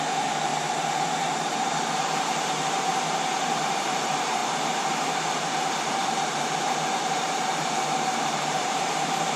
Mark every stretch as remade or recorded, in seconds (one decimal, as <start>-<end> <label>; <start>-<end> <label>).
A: 0.0-0.5 remade; 0.5-1.4 recorded; 1.4-9.4 remade